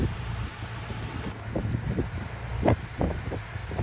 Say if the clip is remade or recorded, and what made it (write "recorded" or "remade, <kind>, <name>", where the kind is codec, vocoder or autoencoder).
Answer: remade, vocoder, BigVGAN v2